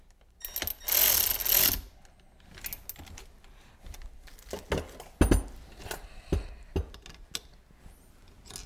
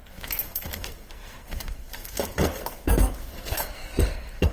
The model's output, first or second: second